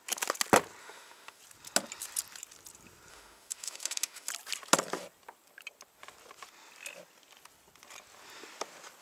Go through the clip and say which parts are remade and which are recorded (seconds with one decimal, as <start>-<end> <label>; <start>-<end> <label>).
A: 0.0-0.8 recorded; 0.8-1.4 remade; 1.4-3.1 recorded; 3.1-4.3 remade; 4.3-9.0 recorded